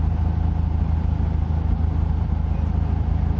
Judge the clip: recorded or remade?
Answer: recorded